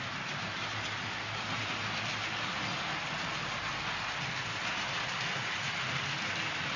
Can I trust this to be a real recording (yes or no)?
yes